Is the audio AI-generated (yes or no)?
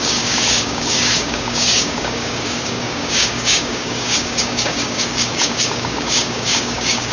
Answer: yes